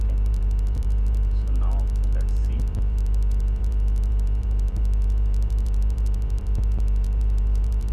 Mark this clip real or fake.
fake